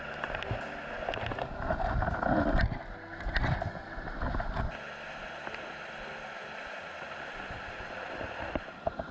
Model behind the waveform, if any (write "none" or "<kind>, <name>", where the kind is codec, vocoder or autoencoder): none